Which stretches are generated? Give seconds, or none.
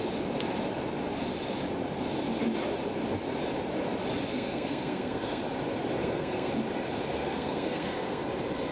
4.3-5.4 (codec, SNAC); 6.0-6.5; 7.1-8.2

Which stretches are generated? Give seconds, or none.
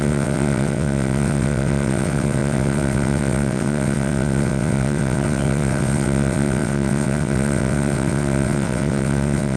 0.0-9.6 (vocoder, WaveNeXt)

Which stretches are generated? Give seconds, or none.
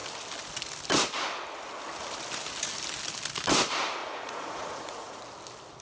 4.0-5.2 (vocoder, Vocos)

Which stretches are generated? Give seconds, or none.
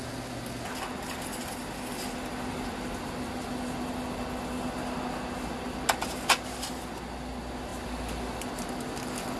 none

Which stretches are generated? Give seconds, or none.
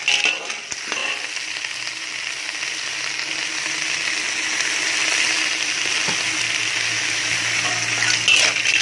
none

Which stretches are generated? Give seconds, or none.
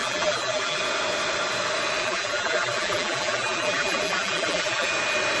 0.0-0.8 (vocoder, BigVGAN v2); 2.0-4.9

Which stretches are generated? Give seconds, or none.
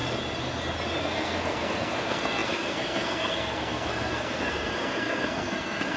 1.0-6.0 (codec, SNAC)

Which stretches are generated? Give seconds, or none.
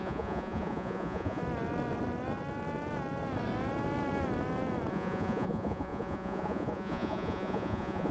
0.0-1.4 (vocoder, Vocos); 4.9-8.1